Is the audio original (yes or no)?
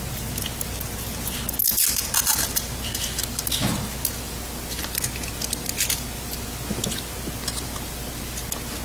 yes